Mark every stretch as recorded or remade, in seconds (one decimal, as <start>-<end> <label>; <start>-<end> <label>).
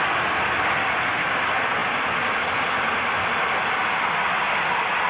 0.0-5.1 recorded